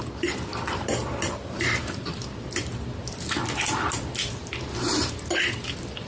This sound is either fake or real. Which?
real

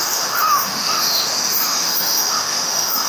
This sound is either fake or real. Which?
fake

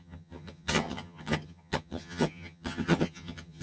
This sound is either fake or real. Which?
fake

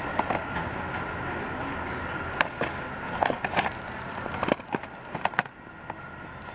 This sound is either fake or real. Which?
real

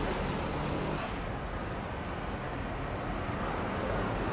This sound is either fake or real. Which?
real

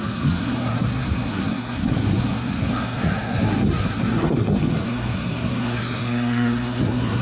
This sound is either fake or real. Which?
fake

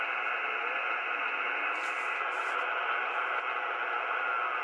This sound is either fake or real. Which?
real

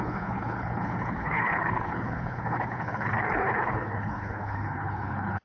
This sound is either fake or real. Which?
fake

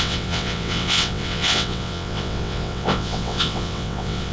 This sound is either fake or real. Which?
fake